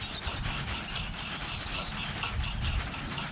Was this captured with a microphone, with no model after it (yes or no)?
yes